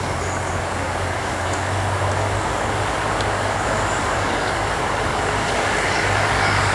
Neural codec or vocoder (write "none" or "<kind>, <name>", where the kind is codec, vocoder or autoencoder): codec, DAC